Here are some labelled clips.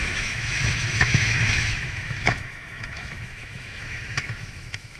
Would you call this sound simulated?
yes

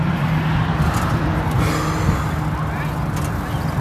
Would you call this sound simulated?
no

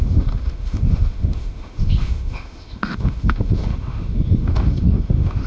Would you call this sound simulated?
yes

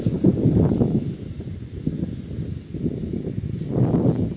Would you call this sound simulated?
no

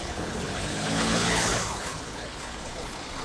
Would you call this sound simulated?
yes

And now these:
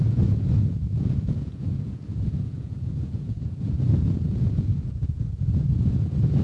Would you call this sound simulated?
yes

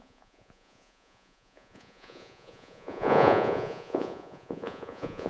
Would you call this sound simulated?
yes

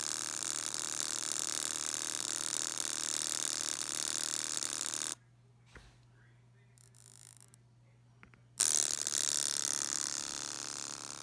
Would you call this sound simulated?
no